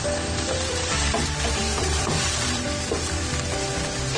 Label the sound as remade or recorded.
remade